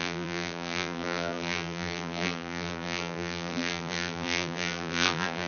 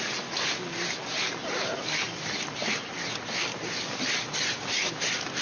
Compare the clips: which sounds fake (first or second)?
first